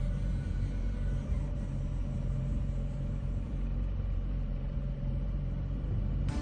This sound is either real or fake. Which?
fake